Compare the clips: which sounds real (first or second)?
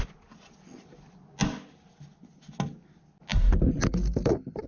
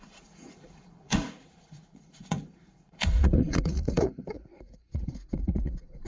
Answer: first